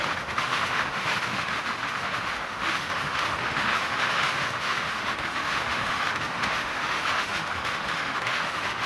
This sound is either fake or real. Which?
fake